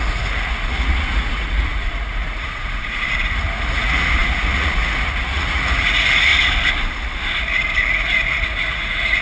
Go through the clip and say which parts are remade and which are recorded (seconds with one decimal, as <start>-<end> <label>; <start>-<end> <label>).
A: 0.0-6.3 remade; 6.3-7.8 recorded; 7.8-9.2 remade